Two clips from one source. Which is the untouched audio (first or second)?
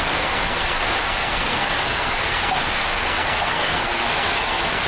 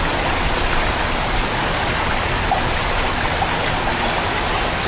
second